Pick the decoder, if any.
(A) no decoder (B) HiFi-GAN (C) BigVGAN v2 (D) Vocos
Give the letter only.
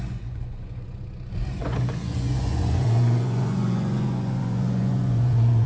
D